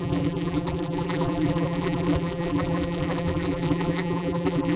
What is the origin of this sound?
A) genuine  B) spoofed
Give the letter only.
B